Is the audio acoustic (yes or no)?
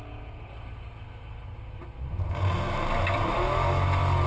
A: yes